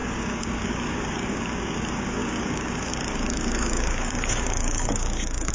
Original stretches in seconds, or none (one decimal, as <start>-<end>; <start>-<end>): none